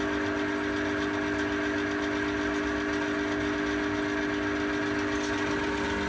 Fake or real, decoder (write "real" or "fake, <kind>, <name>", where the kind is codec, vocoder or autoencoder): real